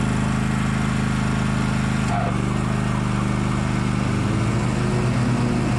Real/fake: real